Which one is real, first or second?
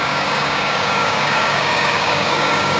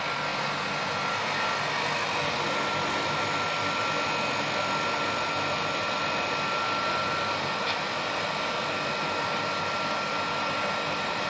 second